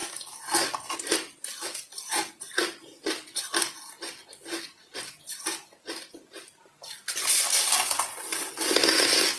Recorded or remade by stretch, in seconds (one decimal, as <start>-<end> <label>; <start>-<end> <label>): 0.0-9.4 recorded

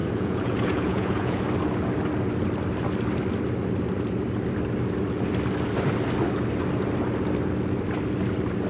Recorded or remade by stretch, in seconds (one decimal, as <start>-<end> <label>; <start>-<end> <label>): 0.0-1.4 remade; 1.4-8.7 recorded

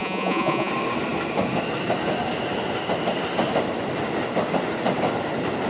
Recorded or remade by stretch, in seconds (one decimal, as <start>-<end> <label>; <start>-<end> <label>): 0.0-0.7 remade; 0.7-5.7 recorded

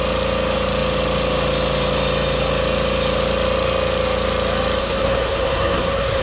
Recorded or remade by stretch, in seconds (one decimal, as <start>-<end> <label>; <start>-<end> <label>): 0.0-4.8 recorded; 4.8-6.2 remade

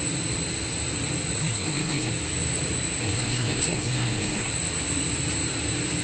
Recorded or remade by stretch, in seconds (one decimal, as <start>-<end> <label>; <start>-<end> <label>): 0.0-1.4 recorded; 1.4-2.1 remade; 2.1-3.0 recorded; 3.0-4.5 remade; 4.5-6.0 recorded

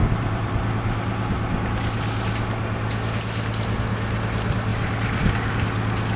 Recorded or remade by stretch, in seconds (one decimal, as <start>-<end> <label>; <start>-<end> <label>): 0.0-0.5 remade; 0.5-4.7 recorded; 4.7-5.5 remade; 5.5-6.2 recorded